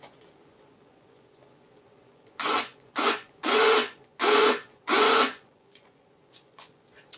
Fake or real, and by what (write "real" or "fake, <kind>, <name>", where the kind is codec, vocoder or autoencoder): fake, vocoder, Vocos